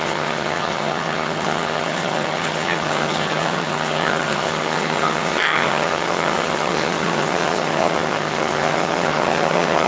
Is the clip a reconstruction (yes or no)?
yes